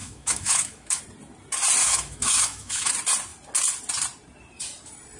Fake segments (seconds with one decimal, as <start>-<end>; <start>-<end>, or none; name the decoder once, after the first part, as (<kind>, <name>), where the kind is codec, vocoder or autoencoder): 0.0-1.0 (autoencoder, DAC-VAE); 1.8-2.9